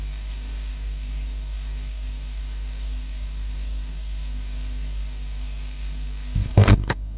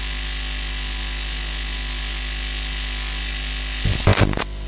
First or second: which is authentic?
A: second